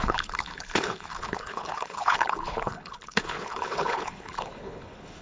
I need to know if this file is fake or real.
fake